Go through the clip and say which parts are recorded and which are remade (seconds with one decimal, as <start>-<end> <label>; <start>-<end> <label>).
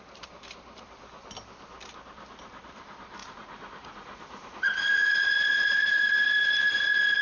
0.0-3.2 recorded; 3.2-6.0 remade; 6.0-7.2 recorded